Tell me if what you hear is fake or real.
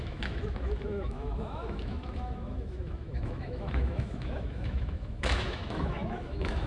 fake